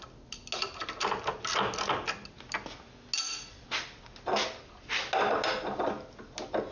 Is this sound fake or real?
real